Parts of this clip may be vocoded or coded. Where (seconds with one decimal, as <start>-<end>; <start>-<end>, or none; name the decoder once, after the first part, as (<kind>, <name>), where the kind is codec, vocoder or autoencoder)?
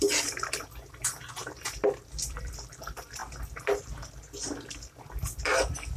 0.0-1.4 (vocoder, BigVGAN v2); 2.3-3.2